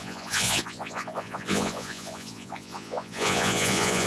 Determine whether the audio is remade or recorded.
remade